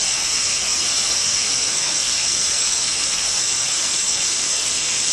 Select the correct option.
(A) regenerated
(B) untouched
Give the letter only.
A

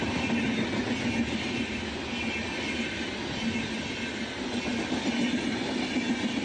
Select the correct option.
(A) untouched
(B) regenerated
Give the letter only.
A